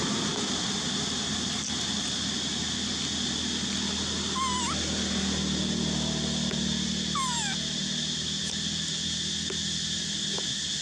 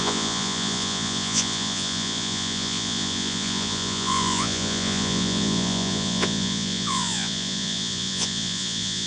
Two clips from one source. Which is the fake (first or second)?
second